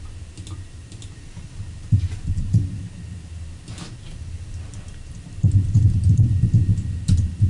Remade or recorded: recorded